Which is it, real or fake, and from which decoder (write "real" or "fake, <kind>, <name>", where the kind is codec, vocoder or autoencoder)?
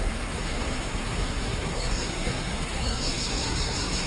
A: fake, codec, SNAC